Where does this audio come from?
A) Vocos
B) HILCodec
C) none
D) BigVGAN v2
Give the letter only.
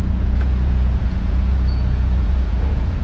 A